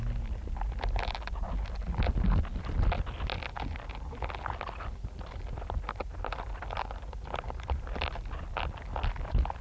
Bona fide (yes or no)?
yes